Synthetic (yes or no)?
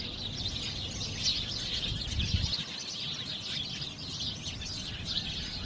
no